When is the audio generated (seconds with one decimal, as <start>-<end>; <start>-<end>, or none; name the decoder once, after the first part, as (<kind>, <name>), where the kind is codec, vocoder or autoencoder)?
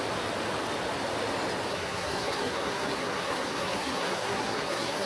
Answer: 1.7-5.1 (codec, SNAC)